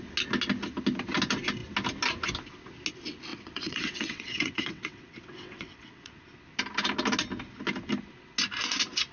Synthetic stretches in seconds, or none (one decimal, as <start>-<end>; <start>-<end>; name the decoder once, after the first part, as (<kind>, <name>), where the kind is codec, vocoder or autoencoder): 3.3-6.1 (vocoder, WaveNeXt)